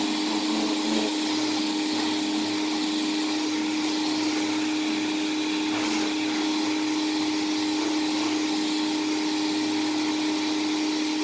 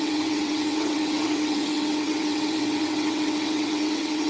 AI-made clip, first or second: second